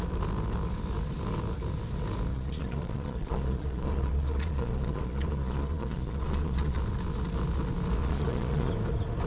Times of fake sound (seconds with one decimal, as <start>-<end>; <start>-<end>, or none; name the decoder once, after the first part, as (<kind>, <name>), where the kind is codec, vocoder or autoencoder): 2.3-6.8 (vocoder, Vocos); 8.0-8.7